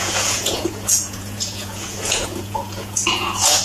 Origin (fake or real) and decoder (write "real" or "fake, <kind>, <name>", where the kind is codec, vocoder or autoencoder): fake, vocoder, Vocos